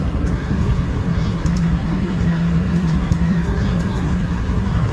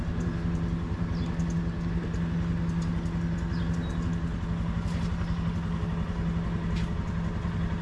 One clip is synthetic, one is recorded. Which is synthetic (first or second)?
first